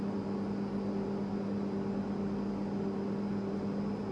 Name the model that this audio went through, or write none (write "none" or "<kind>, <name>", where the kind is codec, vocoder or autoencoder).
none